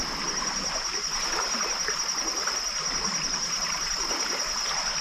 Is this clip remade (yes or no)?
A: no